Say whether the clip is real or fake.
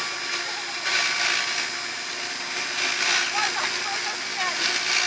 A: real